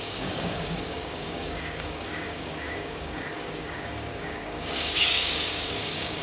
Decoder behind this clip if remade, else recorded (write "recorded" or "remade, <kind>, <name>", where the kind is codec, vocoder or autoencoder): remade, codec, DAC